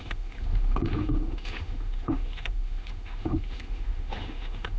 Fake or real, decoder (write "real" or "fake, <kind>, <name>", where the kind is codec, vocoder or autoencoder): fake, autoencoder, DAC-VAE